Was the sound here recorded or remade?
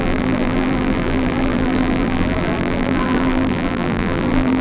remade